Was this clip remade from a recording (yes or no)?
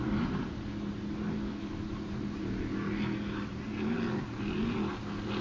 no